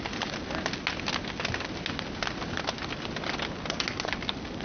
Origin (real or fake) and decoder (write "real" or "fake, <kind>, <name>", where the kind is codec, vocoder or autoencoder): real